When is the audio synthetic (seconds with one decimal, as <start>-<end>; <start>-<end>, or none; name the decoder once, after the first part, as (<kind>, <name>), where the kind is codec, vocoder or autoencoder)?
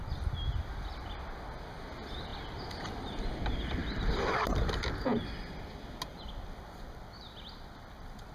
none